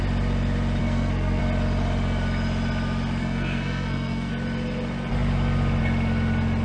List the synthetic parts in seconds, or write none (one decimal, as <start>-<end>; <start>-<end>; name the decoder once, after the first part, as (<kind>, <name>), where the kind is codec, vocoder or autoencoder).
0.8-1.4 (codec, SNAC); 3.2-4.3